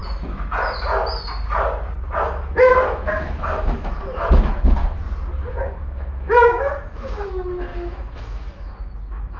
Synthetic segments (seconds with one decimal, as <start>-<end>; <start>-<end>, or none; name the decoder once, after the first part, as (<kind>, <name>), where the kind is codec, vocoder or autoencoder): 2.2-4.8 (autoencoder, DAC-VAE); 5.5-9.4

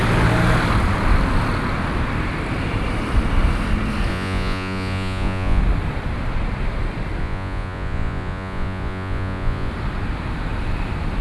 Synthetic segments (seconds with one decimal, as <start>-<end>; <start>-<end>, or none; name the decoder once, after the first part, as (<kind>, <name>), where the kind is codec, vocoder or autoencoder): 4.1-5.6 (vocoder, Vocos); 7.2-9.7

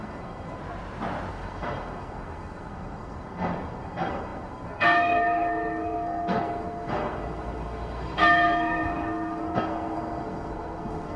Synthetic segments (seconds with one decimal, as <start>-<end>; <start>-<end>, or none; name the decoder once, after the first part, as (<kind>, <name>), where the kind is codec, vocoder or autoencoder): 0.0-0.6 (codec, SNAC); 1.3-11.2

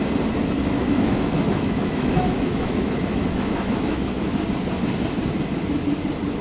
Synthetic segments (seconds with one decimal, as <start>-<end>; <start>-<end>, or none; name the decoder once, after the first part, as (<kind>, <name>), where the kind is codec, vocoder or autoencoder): 0.6-4.4 (autoencoder, DAC-VAE)

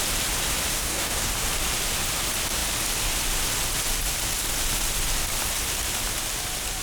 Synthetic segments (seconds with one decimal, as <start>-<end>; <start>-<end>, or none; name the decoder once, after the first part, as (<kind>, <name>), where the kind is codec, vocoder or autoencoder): 0.7-1.3 (codec, DAC)

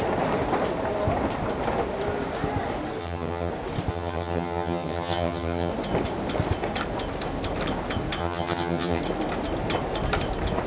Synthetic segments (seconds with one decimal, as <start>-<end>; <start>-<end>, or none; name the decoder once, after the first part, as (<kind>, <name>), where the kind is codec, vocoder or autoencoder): 3.0-3.5 (vocoder, HiFi-GAN); 3.9-5.7; 8.2-9.0

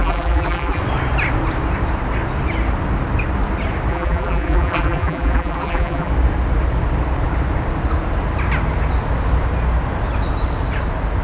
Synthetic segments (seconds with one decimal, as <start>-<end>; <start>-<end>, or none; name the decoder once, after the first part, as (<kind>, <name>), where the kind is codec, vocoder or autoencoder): 0.0-0.8 (vocoder, BigVGAN v2); 3.9-6.1

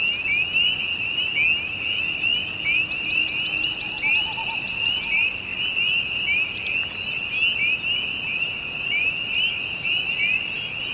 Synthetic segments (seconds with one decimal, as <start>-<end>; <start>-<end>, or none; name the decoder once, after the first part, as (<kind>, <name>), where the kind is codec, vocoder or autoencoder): none